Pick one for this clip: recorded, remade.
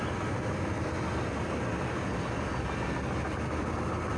recorded